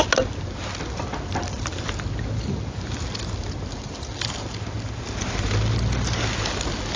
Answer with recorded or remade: recorded